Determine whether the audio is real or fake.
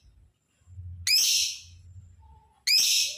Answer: real